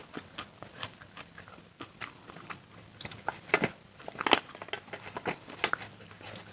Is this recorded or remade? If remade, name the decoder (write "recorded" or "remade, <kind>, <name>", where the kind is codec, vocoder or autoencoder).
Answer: recorded